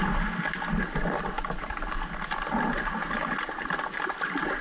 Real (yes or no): yes